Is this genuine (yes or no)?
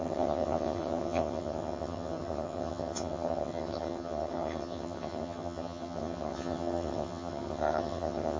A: no